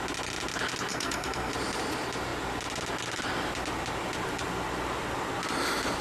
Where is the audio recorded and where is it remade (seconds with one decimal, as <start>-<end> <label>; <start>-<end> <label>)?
0.0-0.9 recorded; 0.9-1.5 remade; 1.5-6.0 recorded